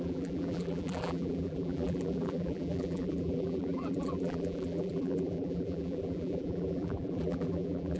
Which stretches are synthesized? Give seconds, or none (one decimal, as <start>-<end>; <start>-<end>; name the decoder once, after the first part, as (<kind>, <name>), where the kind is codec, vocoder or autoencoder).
0.0-8.0 (vocoder, BigVGAN v2)